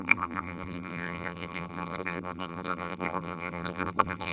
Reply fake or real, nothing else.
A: fake